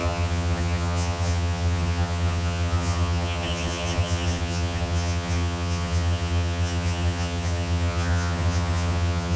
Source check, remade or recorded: remade